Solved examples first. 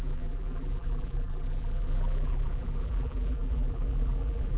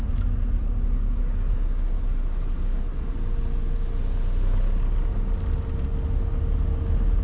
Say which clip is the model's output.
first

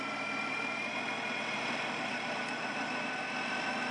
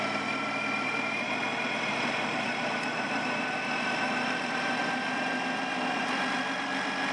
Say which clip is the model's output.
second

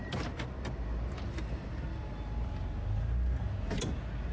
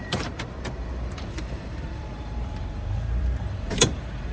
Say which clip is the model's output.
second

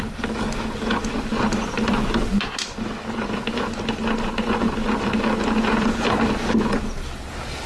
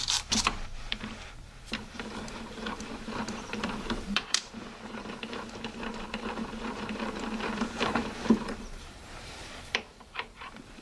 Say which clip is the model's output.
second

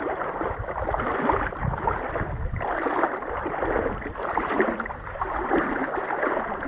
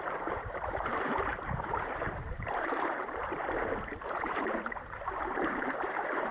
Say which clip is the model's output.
second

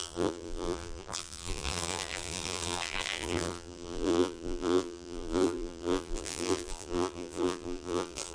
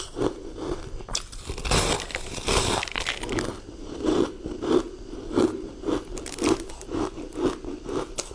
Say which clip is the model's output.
first